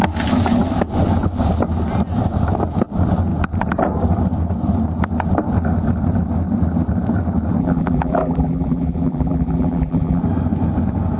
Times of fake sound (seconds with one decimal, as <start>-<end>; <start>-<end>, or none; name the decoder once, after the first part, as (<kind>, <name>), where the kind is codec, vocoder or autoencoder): 7.6-10.2 (vocoder, BigVGAN v2)